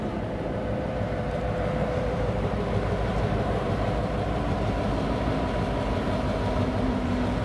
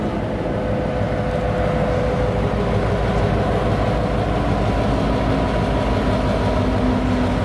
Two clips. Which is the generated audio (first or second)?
first